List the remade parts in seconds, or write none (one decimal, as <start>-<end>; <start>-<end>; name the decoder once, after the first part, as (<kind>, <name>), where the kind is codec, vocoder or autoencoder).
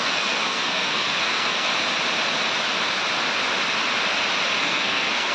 0.0-1.7 (codec, SNAC); 4.6-5.3